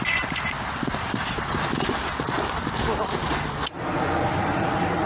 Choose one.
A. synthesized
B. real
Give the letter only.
A